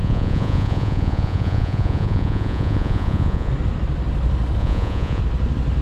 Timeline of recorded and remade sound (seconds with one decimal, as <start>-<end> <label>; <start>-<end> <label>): 0.0-3.5 remade; 3.5-4.6 recorded; 4.6-5.2 remade; 5.2-5.8 recorded